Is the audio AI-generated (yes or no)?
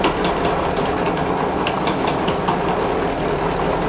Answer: no